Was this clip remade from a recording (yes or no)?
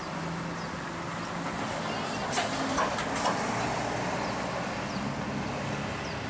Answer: no